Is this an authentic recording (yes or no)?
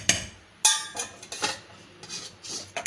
yes